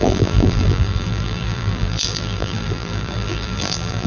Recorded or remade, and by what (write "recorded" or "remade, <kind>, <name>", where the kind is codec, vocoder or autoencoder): remade, vocoder, BigVGAN v2